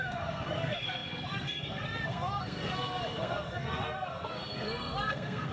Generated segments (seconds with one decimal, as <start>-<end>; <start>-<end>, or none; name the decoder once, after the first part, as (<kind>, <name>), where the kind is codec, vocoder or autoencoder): 0.0-5.5 (codec, SNAC)